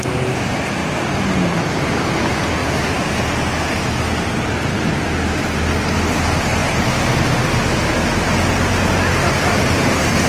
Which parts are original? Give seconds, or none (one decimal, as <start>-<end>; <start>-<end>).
0.0-2.6; 3.2-10.3